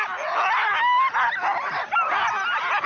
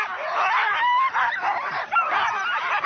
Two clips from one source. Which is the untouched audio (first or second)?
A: first